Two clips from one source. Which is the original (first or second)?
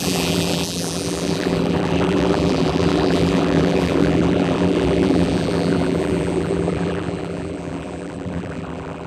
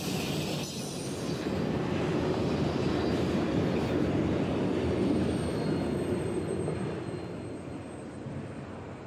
second